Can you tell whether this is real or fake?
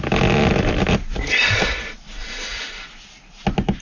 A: real